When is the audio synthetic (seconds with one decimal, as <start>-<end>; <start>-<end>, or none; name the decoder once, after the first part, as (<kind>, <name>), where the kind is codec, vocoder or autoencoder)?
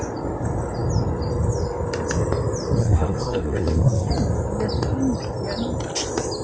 2.8-4.1 (codec, SNAC)